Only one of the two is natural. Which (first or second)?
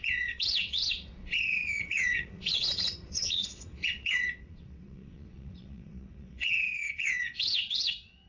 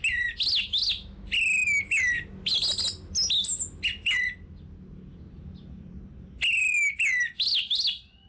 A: second